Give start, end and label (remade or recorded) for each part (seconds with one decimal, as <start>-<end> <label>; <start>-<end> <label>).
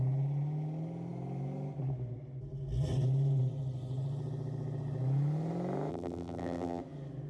0.0-5.9 recorded; 5.9-6.8 remade; 6.8-7.3 recorded